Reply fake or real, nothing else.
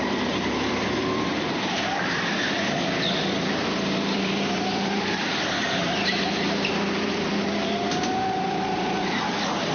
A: fake